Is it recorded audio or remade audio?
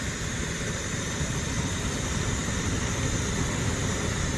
recorded